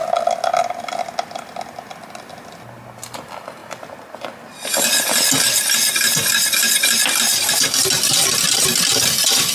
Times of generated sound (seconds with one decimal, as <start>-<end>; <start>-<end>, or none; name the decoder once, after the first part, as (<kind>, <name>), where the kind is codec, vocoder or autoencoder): none